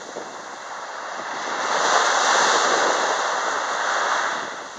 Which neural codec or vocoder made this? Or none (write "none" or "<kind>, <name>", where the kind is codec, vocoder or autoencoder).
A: none